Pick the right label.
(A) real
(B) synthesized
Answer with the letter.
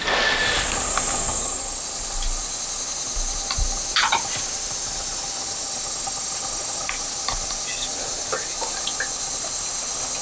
A